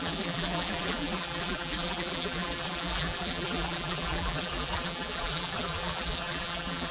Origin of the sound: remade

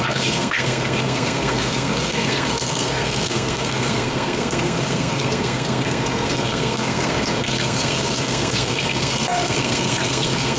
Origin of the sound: remade